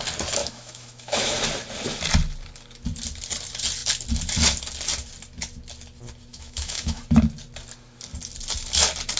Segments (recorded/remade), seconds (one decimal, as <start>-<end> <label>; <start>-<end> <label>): 0.0-0.4 recorded; 0.4-1.4 remade; 1.4-6.3 recorded; 6.3-7.0 remade; 7.0-9.2 recorded